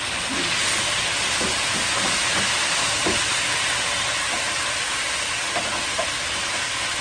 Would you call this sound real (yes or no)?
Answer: yes